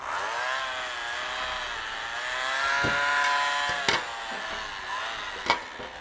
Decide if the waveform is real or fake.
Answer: real